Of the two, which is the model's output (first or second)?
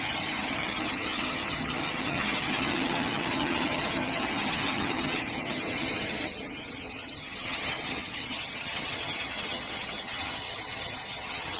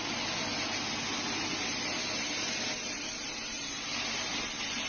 first